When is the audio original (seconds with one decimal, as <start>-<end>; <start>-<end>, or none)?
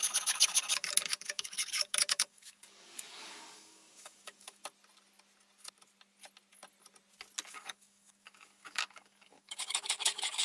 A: 4.6-7.5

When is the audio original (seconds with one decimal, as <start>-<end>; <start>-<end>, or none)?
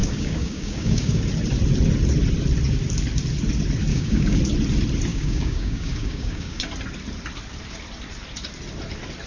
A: 1.2-3.9; 4.4-5.1; 6.7-9.3